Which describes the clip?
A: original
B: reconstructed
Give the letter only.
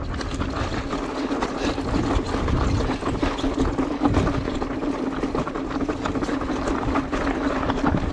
A